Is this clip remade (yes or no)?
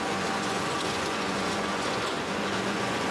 yes